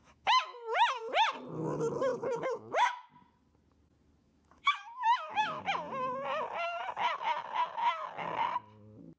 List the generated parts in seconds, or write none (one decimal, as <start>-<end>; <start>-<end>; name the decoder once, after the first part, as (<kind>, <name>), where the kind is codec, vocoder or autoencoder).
0.0-1.0 (autoencoder, DAC-VAE); 2.1-3.1; 4.2-5.6